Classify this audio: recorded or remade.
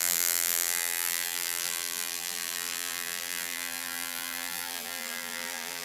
remade